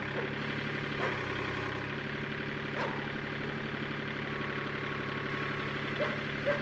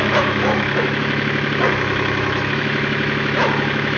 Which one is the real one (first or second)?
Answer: first